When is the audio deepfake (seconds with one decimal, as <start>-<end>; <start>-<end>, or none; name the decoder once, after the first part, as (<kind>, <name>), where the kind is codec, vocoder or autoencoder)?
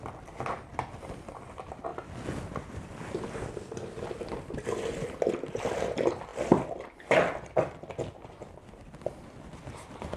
none